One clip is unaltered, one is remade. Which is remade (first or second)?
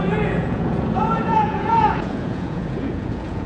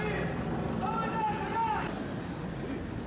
first